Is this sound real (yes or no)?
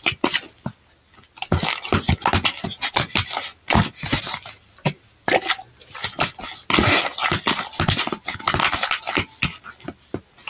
yes